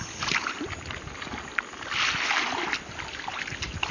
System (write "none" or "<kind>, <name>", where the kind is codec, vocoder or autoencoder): none